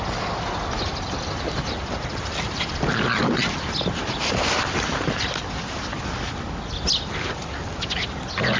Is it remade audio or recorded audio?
recorded